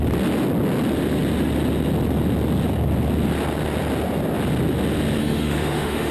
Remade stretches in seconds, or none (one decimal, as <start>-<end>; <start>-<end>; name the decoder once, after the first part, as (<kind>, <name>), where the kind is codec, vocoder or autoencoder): 5.2-6.1 (autoencoder, DAC-VAE)